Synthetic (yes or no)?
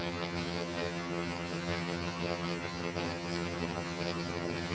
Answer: yes